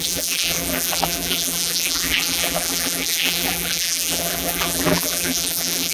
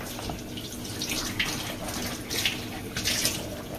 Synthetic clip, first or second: first